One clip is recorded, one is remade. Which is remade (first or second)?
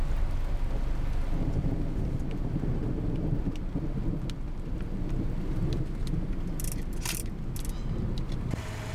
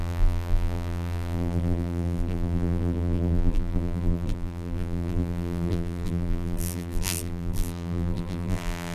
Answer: second